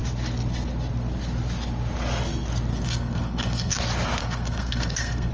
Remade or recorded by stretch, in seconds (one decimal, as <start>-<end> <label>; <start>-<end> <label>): 0.0-2.7 recorded; 2.7-3.8 remade; 3.8-4.2 recorded; 4.2-5.3 remade